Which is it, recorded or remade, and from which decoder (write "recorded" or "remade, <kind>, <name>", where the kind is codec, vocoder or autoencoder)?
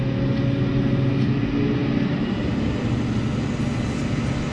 recorded